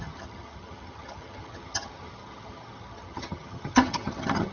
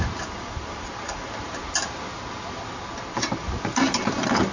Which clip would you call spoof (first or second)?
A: first